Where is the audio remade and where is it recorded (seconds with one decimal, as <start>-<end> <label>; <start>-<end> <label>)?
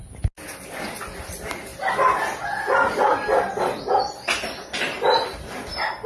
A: 0.0-6.1 recorded